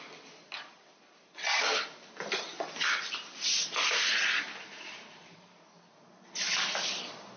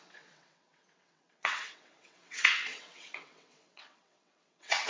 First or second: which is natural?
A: first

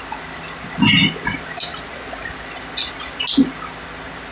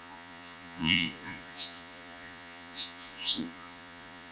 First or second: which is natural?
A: first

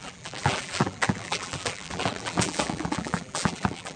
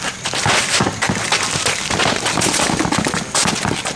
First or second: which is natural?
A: second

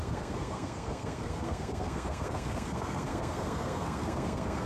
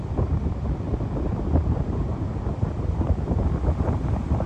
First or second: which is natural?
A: second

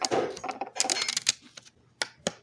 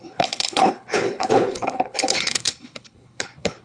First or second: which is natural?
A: first